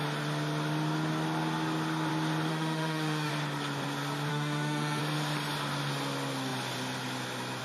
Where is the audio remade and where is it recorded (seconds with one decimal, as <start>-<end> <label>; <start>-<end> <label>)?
0.0-2.5 recorded; 2.5-3.3 remade; 3.3-4.3 recorded; 4.3-5.0 remade; 5.0-7.6 recorded